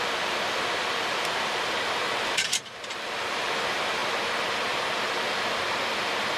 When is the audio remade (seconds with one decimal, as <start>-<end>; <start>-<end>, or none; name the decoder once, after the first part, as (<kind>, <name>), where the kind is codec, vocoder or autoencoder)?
0.0-4.0 (vocoder, BigVGAN v2)